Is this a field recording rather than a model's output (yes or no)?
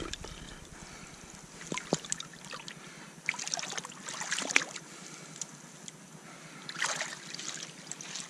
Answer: yes